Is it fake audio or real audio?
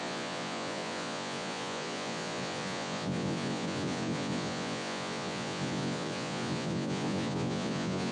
fake